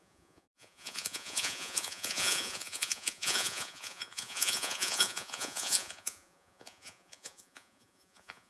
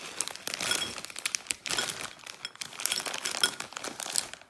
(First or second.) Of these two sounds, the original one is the second